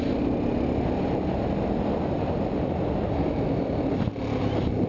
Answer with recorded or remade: recorded